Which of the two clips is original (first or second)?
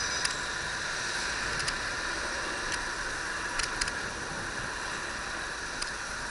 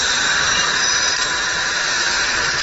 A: first